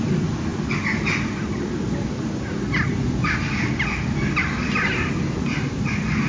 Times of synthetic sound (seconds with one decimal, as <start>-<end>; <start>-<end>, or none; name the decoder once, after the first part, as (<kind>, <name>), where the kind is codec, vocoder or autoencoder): none